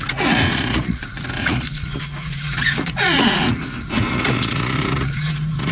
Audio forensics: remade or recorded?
remade